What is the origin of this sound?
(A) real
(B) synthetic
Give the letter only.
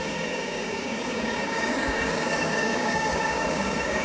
B